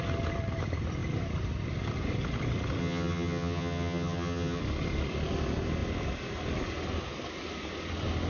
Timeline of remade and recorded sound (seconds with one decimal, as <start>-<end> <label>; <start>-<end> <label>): 0.0-2.8 recorded; 2.8-4.6 remade; 4.6-8.3 recorded